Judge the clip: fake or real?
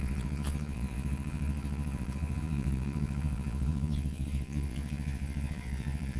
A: fake